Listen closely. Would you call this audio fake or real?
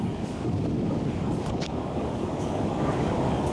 fake